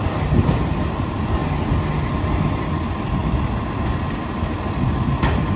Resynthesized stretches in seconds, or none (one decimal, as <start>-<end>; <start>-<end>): none